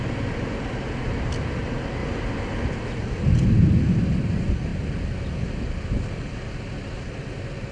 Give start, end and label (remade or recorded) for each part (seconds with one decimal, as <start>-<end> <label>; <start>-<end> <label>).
0.0-7.7 recorded